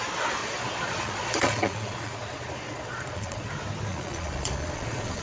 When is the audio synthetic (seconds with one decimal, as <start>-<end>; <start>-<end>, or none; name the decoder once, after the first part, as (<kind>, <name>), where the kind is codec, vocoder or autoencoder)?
0.4-3.5 (vocoder, Vocos); 3.9-5.2

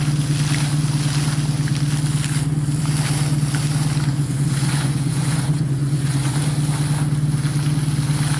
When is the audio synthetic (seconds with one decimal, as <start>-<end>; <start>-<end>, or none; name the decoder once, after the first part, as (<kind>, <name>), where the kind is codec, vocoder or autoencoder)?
4.1-6.3 (vocoder, Vocos)

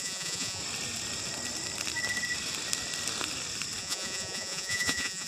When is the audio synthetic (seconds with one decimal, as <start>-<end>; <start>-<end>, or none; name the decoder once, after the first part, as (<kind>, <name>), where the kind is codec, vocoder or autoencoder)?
0.0-0.6 (vocoder, Vocos); 3.8-5.3